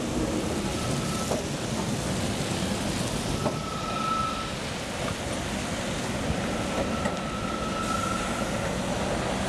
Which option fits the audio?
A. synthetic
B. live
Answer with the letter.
B